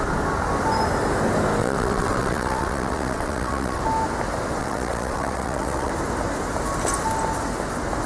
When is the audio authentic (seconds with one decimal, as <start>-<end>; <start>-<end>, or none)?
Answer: 0.0-1.6; 3.8-4.6; 5.9-8.1